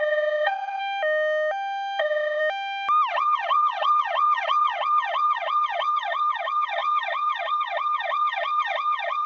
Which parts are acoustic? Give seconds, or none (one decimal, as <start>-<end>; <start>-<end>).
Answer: 0.8-2.0; 2.4-3.1